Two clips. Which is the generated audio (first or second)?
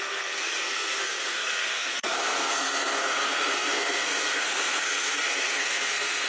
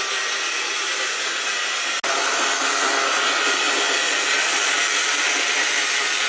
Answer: first